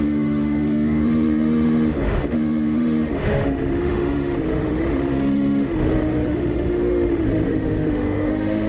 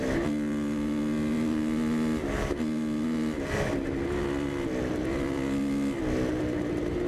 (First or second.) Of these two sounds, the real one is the second